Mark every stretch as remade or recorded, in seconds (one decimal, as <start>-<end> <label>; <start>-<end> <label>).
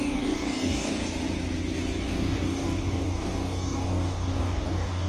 0.0-1.0 remade; 1.0-2.0 recorded; 2.0-5.1 remade